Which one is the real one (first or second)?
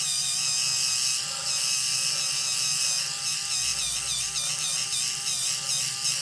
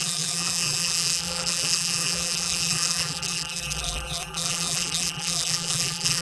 first